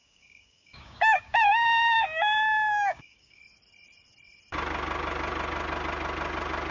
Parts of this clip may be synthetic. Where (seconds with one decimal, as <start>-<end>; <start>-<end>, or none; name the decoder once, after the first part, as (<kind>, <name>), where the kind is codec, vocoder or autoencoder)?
0.0-3.4 (codec, DAC)